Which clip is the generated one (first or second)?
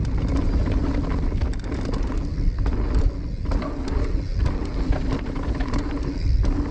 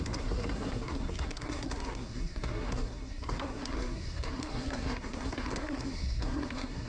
second